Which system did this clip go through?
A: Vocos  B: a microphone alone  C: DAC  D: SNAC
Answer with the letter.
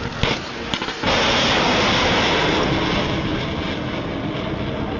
B